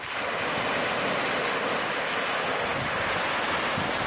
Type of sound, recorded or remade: recorded